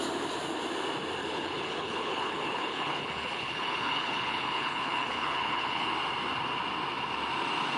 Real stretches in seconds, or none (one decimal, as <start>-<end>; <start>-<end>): 0.0-1.2; 5.9-7.8

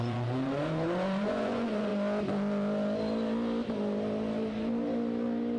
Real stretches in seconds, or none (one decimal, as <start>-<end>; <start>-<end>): 1.9-5.6

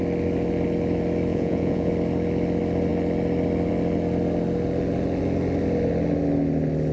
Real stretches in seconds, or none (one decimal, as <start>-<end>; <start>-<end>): 0.0-1.3; 1.9-6.9

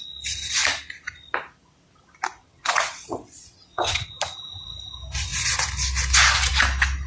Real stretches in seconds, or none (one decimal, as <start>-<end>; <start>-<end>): 0.0-2.4; 4.1-7.1

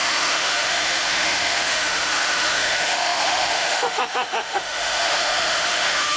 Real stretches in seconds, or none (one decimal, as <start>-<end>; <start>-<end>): none

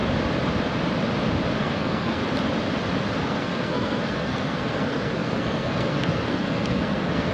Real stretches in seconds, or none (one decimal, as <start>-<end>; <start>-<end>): 0.0-1.6; 2.2-3.2

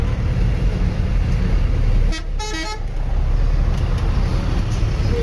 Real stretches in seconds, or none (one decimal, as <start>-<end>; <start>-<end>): 0.0-5.2

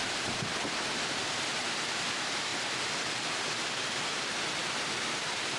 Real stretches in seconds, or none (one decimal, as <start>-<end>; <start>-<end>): 0.0-5.6